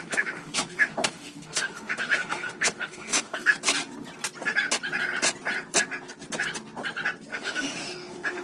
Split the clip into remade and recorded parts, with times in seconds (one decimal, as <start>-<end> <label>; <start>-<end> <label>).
0.0-3.5 remade; 3.5-7.3 recorded; 7.3-8.4 remade